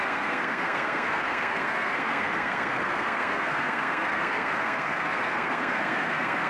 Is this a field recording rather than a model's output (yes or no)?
no